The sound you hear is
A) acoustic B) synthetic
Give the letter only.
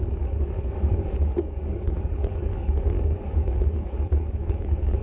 B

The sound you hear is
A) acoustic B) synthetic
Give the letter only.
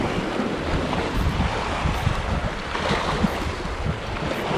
A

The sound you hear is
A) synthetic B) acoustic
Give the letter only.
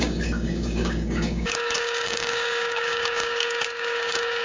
A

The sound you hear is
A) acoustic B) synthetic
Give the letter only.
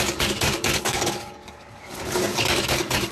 B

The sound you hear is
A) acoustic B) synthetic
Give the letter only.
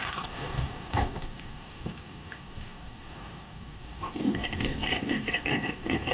B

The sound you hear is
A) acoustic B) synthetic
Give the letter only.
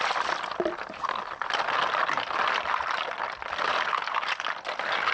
A